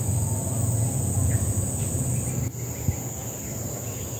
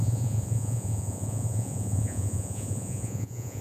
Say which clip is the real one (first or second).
first